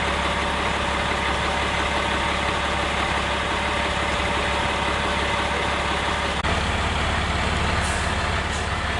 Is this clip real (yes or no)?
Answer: yes